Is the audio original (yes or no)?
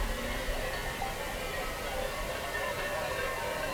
yes